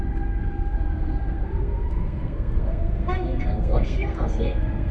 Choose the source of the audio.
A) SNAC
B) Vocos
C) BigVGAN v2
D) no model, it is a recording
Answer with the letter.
A